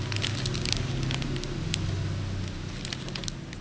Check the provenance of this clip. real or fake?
real